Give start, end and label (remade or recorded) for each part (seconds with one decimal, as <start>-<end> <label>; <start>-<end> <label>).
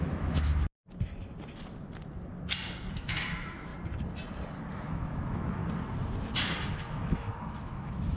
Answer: 0.0-0.5 remade; 0.5-2.9 recorded; 2.9-3.7 remade; 3.7-4.7 recorded; 4.7-5.6 remade; 5.6-6.7 recorded; 6.7-8.2 remade